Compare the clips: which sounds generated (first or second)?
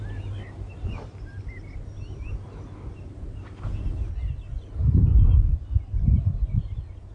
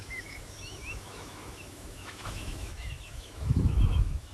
second